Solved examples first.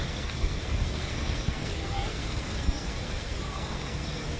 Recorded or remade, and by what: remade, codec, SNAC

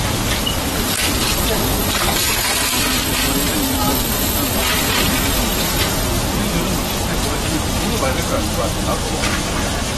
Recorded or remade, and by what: recorded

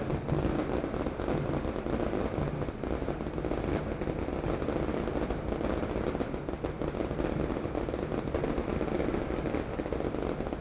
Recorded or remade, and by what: recorded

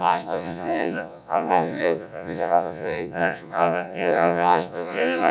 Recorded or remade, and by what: remade, vocoder, Vocos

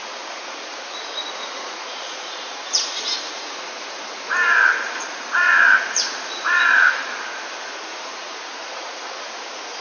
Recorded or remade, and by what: remade, vocoder, Vocos